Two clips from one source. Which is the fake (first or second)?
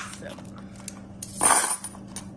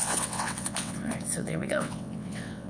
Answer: second